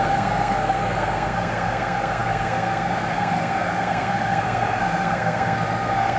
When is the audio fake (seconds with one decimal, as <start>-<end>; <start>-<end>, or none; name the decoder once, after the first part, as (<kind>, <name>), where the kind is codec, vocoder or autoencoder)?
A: 0.0-6.2 (codec, SNAC)